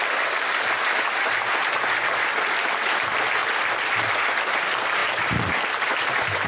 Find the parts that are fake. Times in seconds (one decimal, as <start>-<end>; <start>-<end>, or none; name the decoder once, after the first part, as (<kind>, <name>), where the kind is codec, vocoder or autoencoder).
3.4-4.1 (vocoder, BigVGAN v2); 5.0-5.5